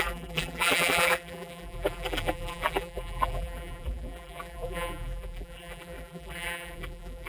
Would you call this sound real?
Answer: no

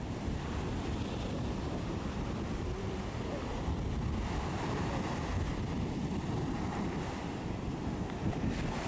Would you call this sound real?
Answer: yes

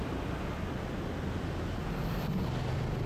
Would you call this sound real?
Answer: yes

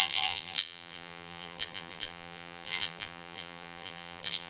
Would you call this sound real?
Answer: no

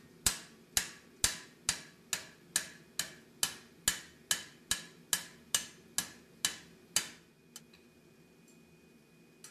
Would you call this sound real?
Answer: yes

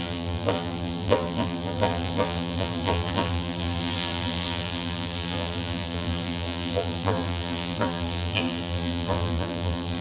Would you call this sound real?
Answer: no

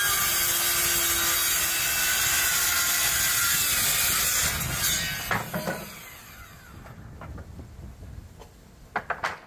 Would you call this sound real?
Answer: yes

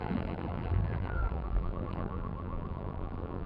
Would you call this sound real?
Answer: no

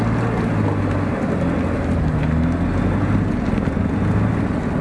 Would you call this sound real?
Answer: yes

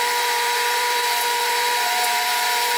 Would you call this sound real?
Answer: no